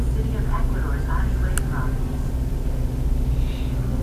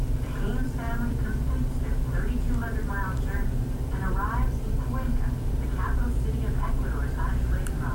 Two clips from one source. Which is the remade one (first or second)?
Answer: second